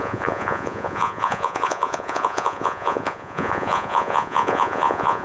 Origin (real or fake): fake